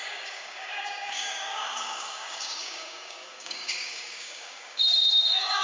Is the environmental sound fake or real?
fake